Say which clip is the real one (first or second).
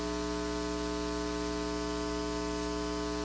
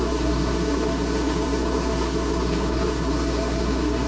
first